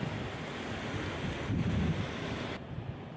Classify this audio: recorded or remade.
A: recorded